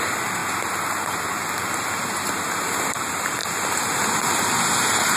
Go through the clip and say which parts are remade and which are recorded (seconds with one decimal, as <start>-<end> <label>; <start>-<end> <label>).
0.0-0.4 remade; 0.4-2.5 recorded; 2.5-5.2 remade